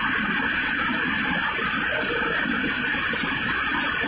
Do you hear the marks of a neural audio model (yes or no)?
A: no